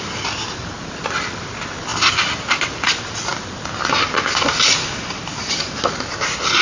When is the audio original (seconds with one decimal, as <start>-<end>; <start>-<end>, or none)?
0.0-6.6